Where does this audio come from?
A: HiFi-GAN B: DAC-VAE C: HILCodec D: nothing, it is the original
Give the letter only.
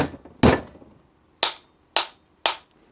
D